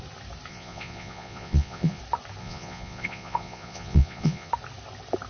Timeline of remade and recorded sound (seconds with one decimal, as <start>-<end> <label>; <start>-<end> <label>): 0.0-0.5 recorded; 0.5-2.0 remade; 2.0-2.4 recorded; 2.4-4.5 remade; 4.5-5.3 recorded